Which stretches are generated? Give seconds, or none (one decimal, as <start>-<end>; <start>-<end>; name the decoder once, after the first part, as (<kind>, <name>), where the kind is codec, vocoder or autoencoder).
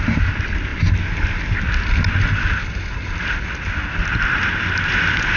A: none